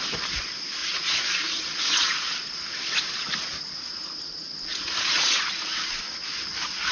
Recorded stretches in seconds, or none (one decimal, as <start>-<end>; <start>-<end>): 0.0-0.8; 2.5-4.7; 5.5-6.9